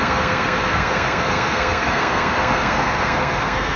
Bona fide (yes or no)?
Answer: no